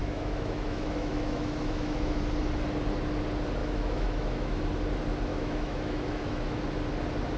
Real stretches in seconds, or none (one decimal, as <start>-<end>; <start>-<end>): 2.2-3.6; 4.6-5.3; 6.6-7.4